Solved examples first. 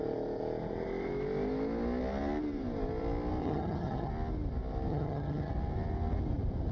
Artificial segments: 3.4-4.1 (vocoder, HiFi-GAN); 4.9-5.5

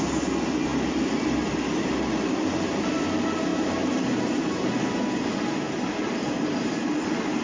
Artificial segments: none

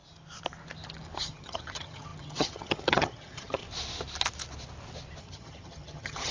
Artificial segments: 1.2-3.6 (vocoder, HiFi-GAN); 5.2-6.3

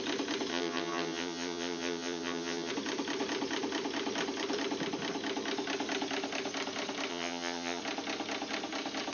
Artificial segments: 0.5-2.7 (vocoder, HiFi-GAN); 7.1-7.8

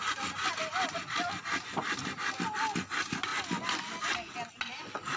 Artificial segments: none

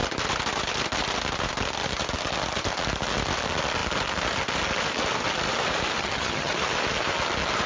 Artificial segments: 6.0-6.5 (vocoder, HiFi-GAN)

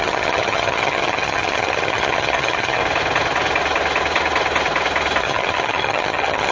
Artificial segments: 0.0-2.8 (vocoder, HiFi-GAN); 5.2-6.5

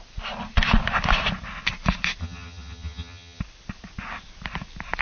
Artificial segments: 2.2-3.4 (vocoder, HiFi-GAN)